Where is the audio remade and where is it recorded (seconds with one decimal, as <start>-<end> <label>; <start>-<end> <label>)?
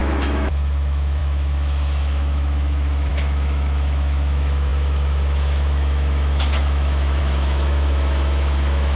0.0-9.0 remade